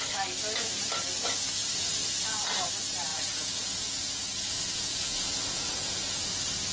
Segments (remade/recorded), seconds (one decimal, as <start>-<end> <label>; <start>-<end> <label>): 0.0-3.1 recorded; 3.1-6.2 remade; 6.2-6.7 recorded